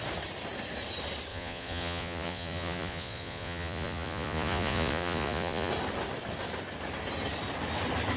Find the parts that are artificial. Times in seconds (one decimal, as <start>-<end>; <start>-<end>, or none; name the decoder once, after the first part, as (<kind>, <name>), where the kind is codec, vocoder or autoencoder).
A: 1.3-5.7 (vocoder, Vocos)